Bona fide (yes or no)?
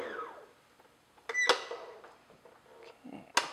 yes